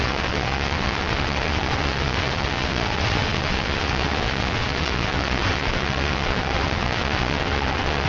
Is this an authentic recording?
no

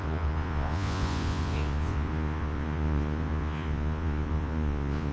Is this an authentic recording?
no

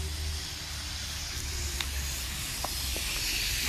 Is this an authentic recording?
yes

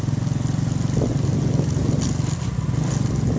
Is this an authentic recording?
yes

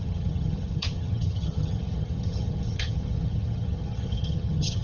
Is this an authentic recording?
no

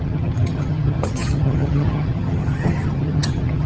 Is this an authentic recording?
no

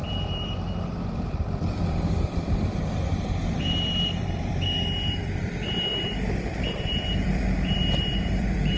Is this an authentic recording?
no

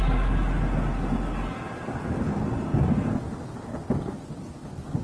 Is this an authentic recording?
yes